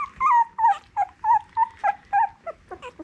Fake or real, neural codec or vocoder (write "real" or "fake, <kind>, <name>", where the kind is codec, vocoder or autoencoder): real